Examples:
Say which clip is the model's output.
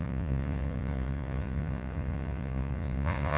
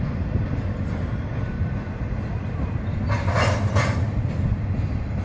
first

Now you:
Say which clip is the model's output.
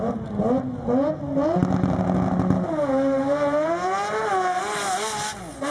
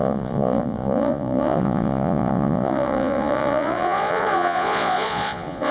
second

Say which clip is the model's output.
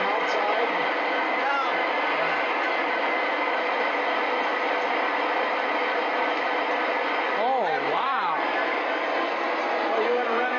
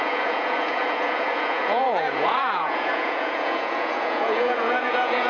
second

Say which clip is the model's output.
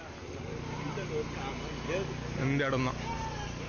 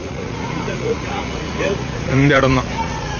second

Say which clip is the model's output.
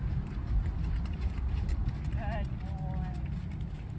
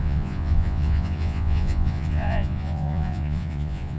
second